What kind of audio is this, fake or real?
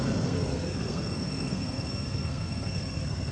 fake